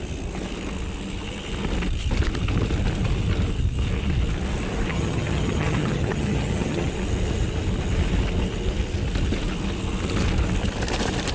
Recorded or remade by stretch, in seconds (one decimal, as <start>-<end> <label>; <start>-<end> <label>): 0.0-4.9 recorded; 4.9-6.9 remade; 6.9-11.3 recorded